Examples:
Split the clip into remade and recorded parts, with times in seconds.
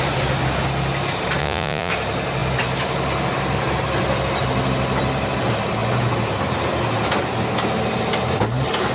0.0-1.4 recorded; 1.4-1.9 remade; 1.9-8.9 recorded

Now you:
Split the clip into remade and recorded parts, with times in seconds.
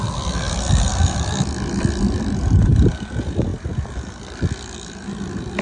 0.0-5.6 recorded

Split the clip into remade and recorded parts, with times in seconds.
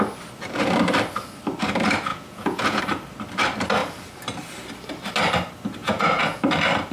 0.0-2.1 recorded; 2.1-2.8 remade; 2.8-5.8 recorded; 5.8-6.4 remade; 6.4-6.9 recorded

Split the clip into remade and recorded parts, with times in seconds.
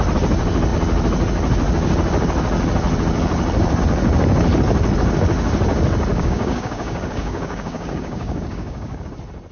0.0-6.1 recorded; 6.1-9.1 remade; 9.1-9.5 recorded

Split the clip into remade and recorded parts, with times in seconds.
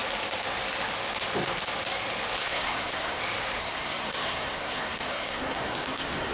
0.0-2.4 recorded; 2.4-3.2 remade; 3.2-3.6 recorded; 3.6-6.3 remade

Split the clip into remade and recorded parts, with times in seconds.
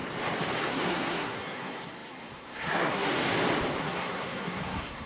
0.0-0.7 recorded; 0.7-3.1 remade; 3.1-3.8 recorded; 3.8-5.1 remade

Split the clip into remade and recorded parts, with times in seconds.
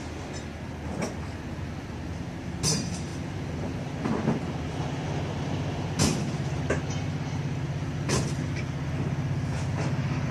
0.0-10.3 recorded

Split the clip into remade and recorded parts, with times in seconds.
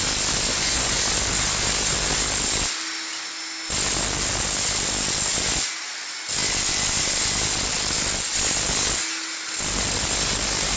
0.0-0.5 recorded; 0.5-1.0 remade; 1.0-10.8 recorded